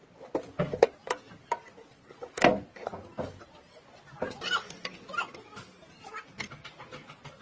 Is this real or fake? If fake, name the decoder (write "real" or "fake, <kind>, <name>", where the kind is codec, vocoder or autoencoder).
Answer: real